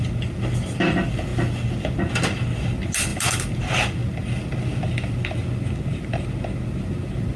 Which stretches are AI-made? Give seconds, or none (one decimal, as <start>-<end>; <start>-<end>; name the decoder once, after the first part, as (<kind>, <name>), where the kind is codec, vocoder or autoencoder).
none